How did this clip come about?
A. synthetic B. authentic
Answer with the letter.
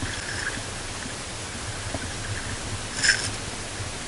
B